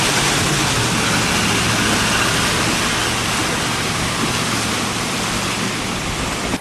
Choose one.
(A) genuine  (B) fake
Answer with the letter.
A